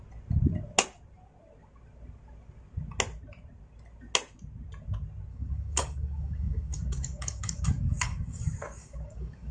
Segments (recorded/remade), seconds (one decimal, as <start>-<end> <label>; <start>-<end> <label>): 0.0-5.3 recorded; 5.3-9.5 remade